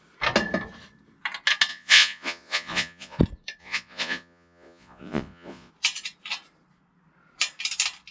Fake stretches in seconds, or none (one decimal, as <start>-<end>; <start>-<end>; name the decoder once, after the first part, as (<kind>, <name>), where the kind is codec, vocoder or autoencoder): 1.7-3.2 (vocoder, Vocos); 3.6-5.7